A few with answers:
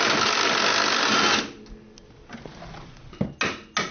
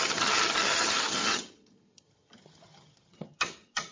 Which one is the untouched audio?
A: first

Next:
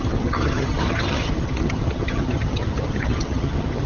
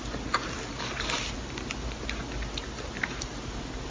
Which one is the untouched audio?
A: second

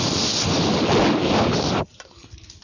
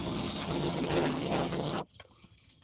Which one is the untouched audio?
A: first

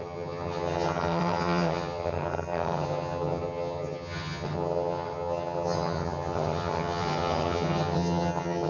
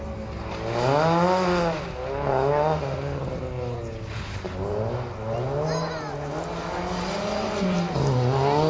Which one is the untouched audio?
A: second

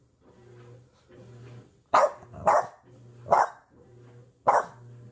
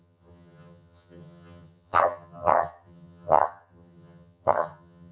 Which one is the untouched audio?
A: first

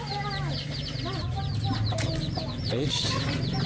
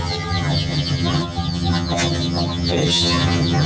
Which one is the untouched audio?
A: first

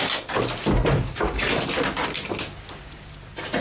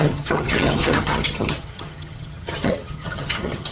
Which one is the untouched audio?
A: first